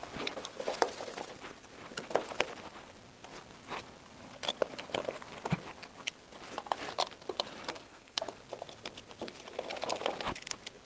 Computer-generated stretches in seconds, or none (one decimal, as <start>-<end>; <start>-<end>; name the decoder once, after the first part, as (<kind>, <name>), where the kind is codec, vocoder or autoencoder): 7.7-8.2 (codec, SNAC)